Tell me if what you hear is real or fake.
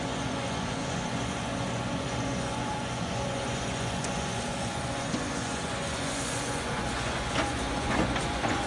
fake